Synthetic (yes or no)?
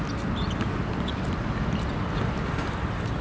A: no